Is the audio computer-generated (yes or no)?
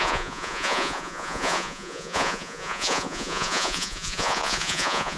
yes